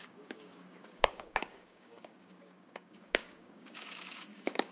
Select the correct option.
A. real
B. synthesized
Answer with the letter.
B